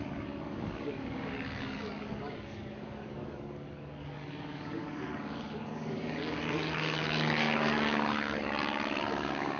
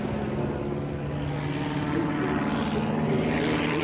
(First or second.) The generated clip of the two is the first